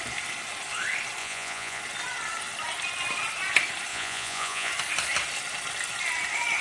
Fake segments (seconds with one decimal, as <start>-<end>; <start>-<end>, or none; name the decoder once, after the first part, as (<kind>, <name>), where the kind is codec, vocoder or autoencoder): 1.2-1.8 (vocoder, Vocos); 3.9-4.7